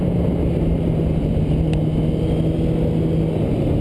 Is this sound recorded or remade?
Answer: recorded